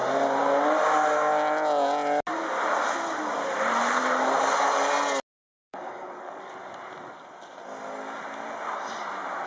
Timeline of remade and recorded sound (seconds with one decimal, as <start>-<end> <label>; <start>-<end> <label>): 0.0-5.4 recorded; 5.4-6.5 remade; 6.5-9.5 recorded